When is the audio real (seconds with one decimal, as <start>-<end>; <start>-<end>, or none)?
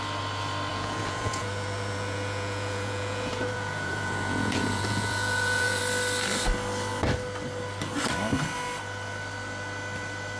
0.0-0.7; 5.8-10.4